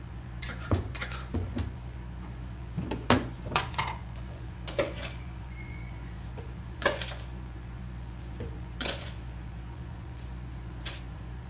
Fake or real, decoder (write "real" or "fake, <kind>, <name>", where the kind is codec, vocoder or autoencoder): fake, vocoder, Vocos